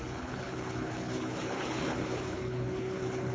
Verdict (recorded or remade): remade